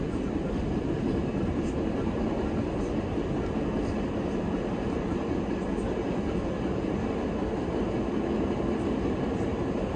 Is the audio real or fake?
real